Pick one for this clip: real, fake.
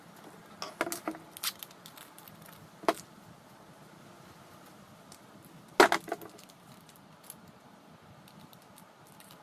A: real